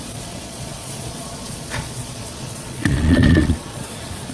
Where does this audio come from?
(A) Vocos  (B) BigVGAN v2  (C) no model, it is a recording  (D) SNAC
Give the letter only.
A